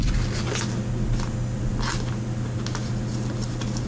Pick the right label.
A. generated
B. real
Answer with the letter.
B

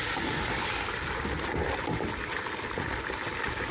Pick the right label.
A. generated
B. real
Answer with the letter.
B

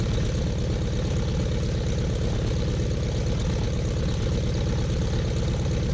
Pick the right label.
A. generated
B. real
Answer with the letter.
B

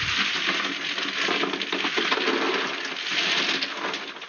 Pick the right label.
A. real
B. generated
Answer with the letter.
A